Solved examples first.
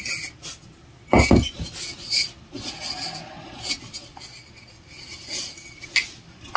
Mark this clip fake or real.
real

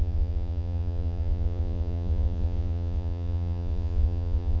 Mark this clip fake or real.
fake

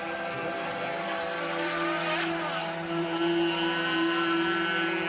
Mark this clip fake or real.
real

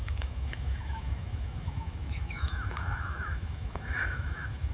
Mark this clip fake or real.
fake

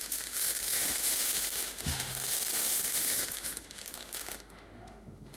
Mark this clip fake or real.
fake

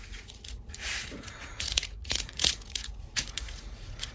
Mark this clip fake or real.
fake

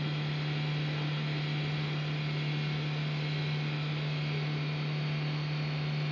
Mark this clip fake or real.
real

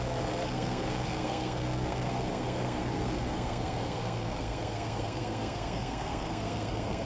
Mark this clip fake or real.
fake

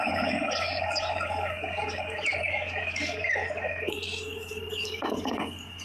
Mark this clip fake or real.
fake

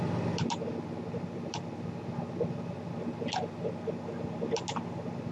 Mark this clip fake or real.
real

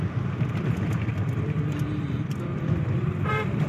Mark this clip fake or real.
fake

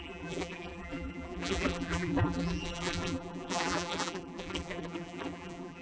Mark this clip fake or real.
fake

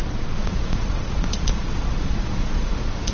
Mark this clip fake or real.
fake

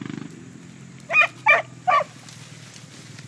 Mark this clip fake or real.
real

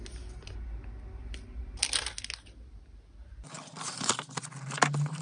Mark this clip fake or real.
real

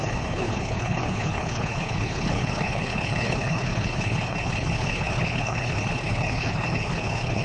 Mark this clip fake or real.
fake